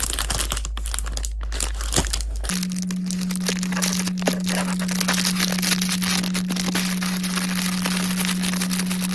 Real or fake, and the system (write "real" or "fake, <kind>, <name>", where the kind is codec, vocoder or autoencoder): real